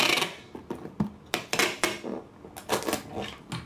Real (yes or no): yes